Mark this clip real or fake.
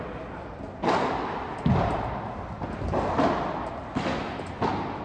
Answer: real